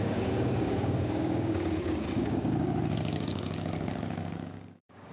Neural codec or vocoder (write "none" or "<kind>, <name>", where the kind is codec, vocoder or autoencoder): codec, DAC